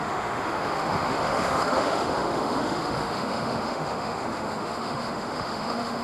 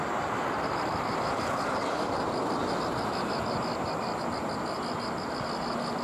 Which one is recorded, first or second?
second